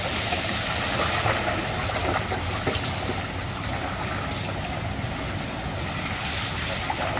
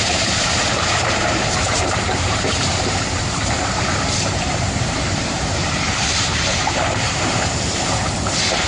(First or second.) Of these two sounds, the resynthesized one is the second